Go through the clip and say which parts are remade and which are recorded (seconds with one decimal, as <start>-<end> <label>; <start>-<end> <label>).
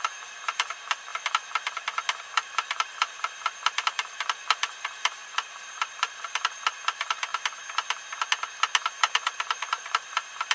0.0-1.1 remade; 1.1-2.2 recorded; 2.2-7.3 remade; 7.3-8.9 recorded; 8.9-10.5 remade